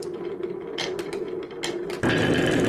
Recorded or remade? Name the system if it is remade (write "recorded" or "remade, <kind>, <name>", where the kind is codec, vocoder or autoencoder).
recorded